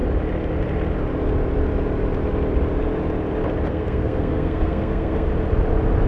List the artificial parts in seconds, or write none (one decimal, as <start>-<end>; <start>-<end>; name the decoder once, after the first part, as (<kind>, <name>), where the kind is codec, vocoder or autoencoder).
3.7-5.3 (codec, SNAC)